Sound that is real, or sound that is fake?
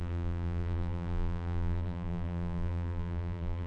fake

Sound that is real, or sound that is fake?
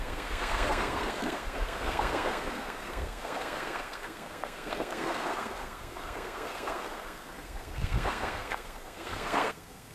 fake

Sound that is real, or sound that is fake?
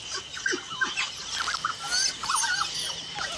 real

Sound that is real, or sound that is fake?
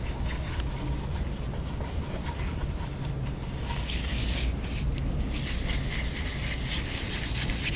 real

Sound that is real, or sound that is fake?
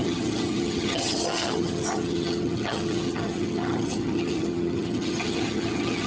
fake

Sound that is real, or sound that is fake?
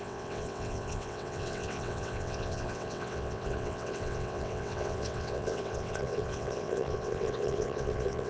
fake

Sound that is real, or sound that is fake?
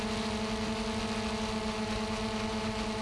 real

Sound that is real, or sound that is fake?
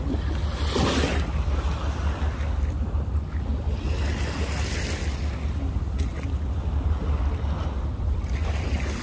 real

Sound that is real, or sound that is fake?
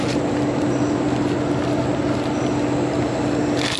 real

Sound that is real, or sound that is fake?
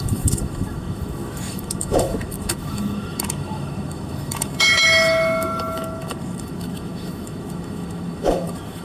fake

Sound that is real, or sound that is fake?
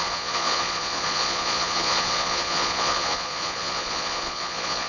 fake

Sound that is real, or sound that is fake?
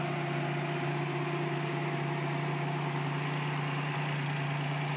real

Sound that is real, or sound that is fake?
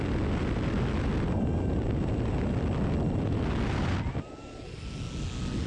real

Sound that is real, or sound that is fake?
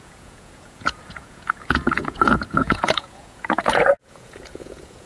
fake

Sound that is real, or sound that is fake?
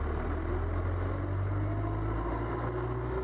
real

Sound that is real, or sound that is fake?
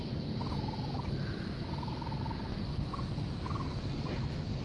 real